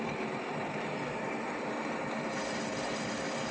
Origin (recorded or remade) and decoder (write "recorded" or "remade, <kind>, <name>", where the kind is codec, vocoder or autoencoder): recorded